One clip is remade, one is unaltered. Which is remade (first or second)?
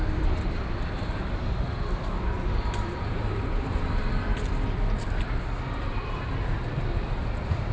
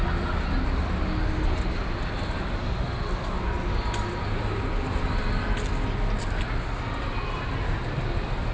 first